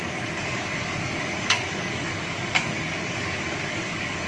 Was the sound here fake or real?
fake